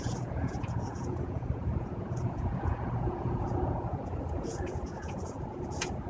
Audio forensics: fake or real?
fake